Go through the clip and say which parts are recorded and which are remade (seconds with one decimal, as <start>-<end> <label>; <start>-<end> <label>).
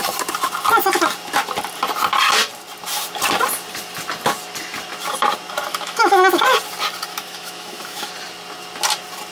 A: 0.0-5.7 recorded; 5.7-6.4 remade; 6.4-7.1 recorded; 7.1-8.1 remade; 8.1-9.3 recorded